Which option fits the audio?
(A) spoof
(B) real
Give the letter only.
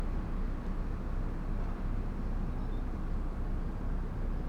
B